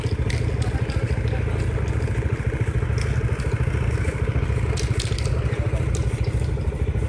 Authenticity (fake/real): real